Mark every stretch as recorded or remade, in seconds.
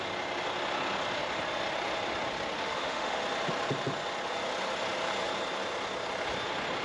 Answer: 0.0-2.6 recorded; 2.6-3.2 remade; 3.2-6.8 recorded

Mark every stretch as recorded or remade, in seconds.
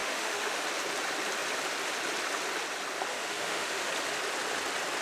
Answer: 0.0-0.6 remade; 0.6-3.1 recorded; 3.1-3.9 remade; 3.9-5.0 recorded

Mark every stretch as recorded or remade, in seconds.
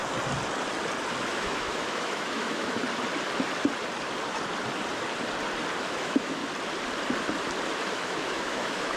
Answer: 0.0-1.3 recorded; 1.3-2.8 remade; 2.8-5.8 recorded; 5.8-6.4 remade; 6.4-7.9 recorded; 7.9-9.0 remade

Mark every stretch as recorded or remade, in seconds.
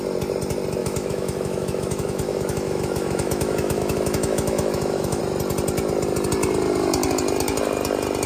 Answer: 0.0-0.8 recorded; 0.8-5.2 remade; 5.2-8.3 recorded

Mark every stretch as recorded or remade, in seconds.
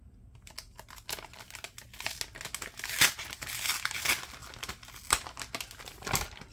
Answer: 0.0-6.5 recorded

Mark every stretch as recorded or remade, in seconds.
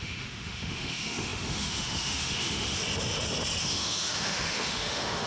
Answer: 0.0-2.8 remade; 2.8-3.6 recorded; 3.6-5.3 remade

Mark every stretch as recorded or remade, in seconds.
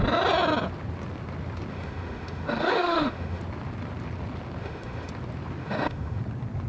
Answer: 0.0-1.7 recorded; 1.7-3.4 remade; 3.4-4.6 recorded; 4.6-5.1 remade; 5.1-5.6 recorded; 5.6-6.2 remade; 6.2-6.7 recorded